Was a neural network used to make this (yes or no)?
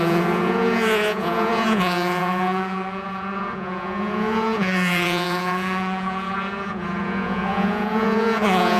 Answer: yes